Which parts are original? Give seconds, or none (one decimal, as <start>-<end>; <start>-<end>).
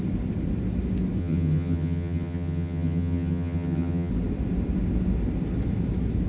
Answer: 0.0-1.2; 4.1-6.3